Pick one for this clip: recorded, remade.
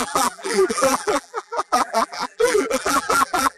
remade